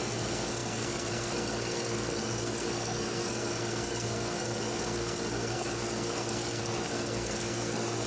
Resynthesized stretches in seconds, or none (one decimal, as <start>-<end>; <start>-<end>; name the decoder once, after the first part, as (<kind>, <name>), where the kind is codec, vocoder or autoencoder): 0.0-8.1 (codec, SNAC)